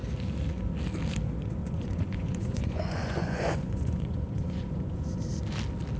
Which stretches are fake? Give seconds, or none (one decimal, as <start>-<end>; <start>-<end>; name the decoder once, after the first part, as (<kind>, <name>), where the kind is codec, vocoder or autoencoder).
1.6-5.2 (vocoder, Vocos)